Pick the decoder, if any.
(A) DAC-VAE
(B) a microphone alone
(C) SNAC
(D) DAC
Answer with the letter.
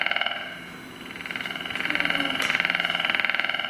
B